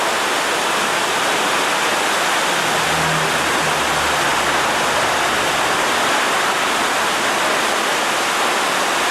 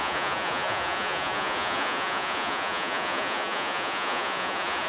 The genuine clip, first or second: first